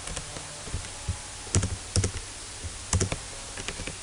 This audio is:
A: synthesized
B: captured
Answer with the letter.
B